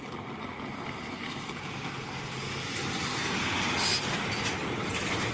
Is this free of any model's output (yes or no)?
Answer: yes